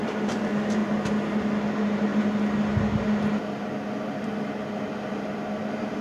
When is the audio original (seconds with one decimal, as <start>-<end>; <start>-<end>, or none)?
0.8-1.4; 2.1-5.1